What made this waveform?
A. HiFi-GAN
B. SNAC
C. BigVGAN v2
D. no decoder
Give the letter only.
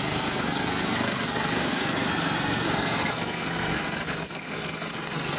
B